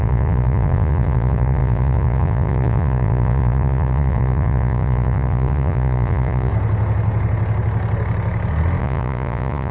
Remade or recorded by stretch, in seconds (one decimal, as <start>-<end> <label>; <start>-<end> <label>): 0.0-6.5 remade; 6.5-8.8 recorded; 8.8-9.7 remade